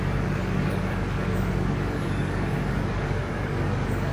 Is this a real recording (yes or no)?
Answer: no